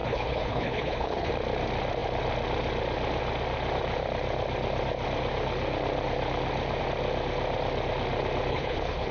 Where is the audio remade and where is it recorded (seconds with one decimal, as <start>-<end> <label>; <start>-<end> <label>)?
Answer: 0.0-1.3 remade; 1.3-8.5 recorded; 8.5-9.1 remade